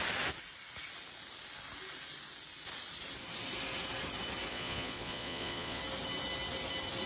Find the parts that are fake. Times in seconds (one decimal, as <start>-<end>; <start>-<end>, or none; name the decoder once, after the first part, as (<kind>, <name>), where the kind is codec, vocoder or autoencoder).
4.5-5.8 (vocoder, Vocos)